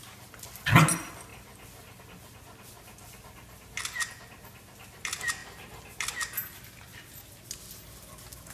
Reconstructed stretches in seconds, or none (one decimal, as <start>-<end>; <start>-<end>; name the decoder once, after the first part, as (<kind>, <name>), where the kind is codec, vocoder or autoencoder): 1.3-2.0 (vocoder, BigVGAN v2)